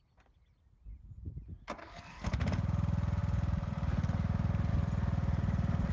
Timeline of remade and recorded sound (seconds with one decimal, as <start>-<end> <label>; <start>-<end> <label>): 0.0-1.8 recorded; 1.8-2.3 remade; 2.3-5.9 recorded